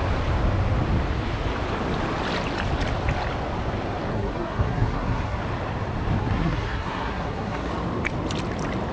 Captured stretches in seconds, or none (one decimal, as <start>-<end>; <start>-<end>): 0.0-4.1; 5.4-6.2; 7.7-8.9